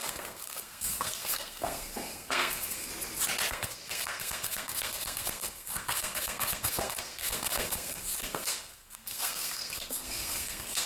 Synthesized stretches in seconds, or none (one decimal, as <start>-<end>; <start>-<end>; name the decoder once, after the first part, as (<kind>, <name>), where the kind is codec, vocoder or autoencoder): 0.0-2.9 (codec, SNAC); 3.5-10.9